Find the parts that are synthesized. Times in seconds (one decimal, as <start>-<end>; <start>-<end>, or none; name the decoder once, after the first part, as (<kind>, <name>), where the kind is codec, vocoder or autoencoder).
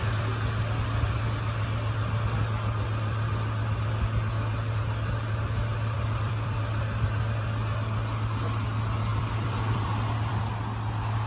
5.7-6.6 (vocoder, BigVGAN v2); 9.1-10.4